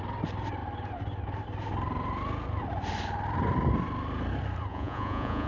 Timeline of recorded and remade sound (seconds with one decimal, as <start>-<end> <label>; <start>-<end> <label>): 0.0-4.7 recorded; 4.7-5.5 remade